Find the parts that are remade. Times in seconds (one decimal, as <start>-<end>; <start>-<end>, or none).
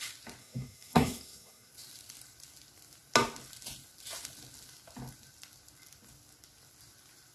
0.4-1.7